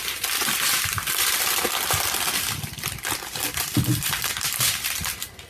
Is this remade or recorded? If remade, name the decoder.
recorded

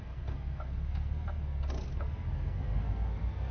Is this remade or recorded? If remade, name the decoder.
remade, codec, SNAC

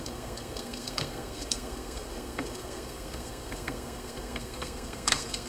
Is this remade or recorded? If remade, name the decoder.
remade, codec, SNAC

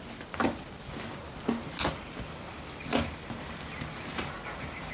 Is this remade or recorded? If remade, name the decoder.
recorded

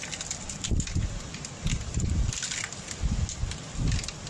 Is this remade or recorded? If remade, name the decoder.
recorded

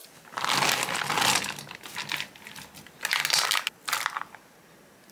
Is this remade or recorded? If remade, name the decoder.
recorded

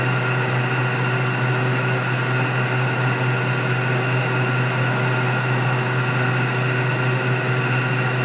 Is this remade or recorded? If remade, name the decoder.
recorded